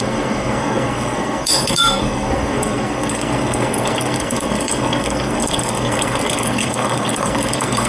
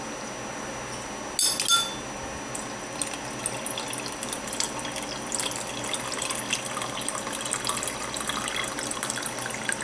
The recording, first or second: second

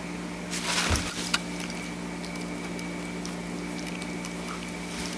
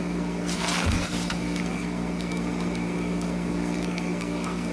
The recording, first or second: first